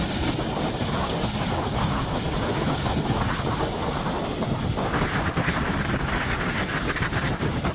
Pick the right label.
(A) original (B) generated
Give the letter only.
B